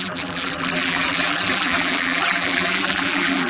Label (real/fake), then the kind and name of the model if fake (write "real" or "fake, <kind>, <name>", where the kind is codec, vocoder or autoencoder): fake, vocoder, BigVGAN v2